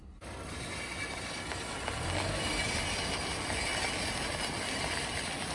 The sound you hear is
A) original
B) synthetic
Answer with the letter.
A